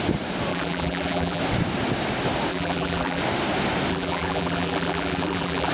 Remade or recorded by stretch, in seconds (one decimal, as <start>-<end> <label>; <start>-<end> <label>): 0.0-0.5 recorded; 0.5-1.4 remade; 1.4-2.5 recorded; 2.5-3.2 remade; 3.2-3.9 recorded; 3.9-5.7 remade